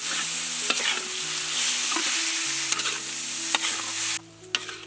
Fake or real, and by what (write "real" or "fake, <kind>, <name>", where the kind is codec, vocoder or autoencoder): real